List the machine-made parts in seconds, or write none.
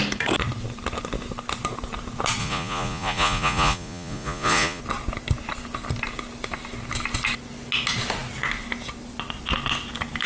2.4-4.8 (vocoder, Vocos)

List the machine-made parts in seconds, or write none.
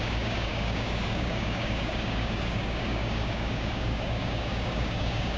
0.0-5.4 (codec, DAC)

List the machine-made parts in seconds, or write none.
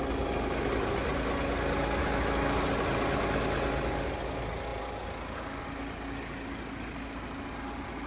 2.0-2.6 (autoencoder, DAC-VAE)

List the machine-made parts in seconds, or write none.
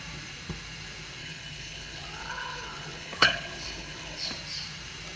1.2-4.3 (codec, HILCodec)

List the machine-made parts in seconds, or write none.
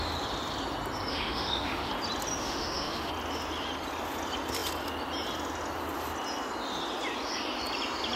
1.1-1.9 (autoencoder, DAC-VAE); 2.4-3.1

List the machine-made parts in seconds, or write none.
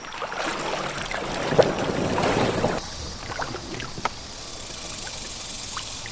none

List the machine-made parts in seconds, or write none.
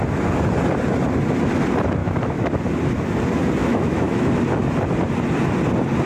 2.0-2.5 (autoencoder, DAC-VAE); 3.6-4.3